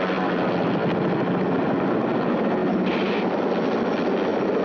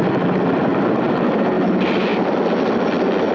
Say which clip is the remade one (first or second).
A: second